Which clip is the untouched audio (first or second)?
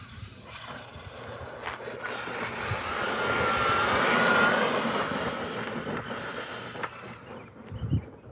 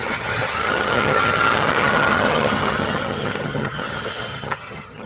first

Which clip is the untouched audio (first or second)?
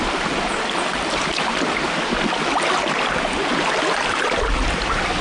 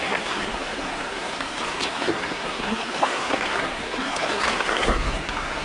first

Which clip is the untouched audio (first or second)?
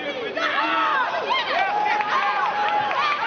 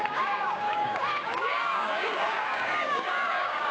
first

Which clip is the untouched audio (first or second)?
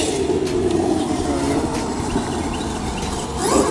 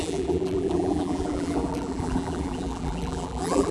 first